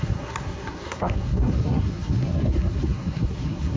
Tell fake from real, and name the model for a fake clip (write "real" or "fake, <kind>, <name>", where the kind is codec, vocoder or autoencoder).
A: fake, codec, SNAC